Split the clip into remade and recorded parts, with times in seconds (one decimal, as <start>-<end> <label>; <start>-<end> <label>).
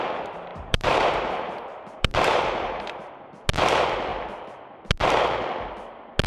0.0-0.5 recorded; 0.5-3.1 remade; 3.1-6.3 recorded